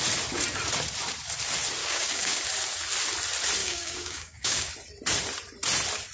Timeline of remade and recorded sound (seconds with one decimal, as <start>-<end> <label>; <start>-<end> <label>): 0.0-1.8 recorded; 1.8-2.4 remade; 2.4-3.6 recorded; 3.6-4.7 remade; 4.7-6.1 recorded